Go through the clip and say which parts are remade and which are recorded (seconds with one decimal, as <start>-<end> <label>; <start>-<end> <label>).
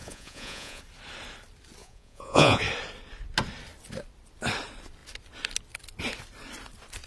0.0-0.8 remade; 0.8-1.8 recorded; 1.8-2.6 remade; 2.6-7.1 recorded